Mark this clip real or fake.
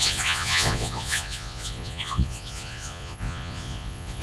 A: fake